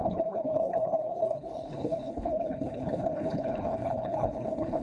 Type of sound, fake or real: fake